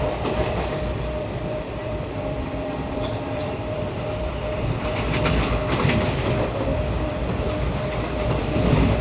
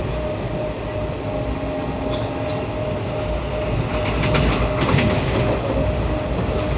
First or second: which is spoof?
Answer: first